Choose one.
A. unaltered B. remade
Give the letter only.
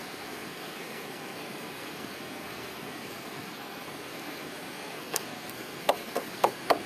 B